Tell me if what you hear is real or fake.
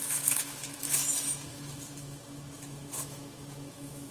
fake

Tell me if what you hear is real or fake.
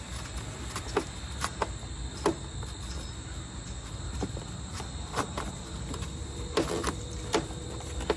real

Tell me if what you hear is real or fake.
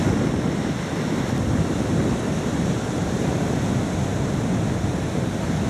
real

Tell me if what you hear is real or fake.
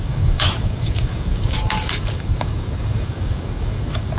fake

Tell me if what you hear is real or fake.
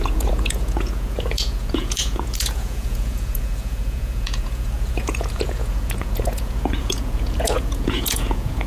fake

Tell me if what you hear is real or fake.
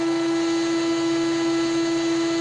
real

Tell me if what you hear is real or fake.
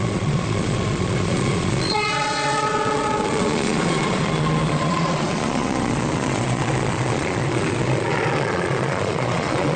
fake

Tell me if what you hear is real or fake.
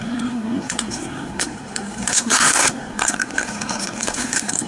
fake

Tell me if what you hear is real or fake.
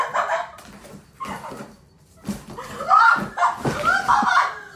real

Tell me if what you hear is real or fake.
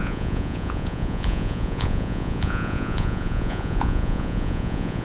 fake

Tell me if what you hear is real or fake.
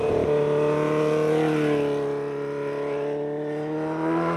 real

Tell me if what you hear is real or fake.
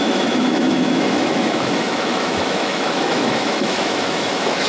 fake